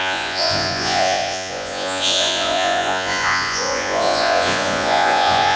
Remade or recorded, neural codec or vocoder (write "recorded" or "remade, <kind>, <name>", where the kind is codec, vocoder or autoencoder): remade, vocoder, Vocos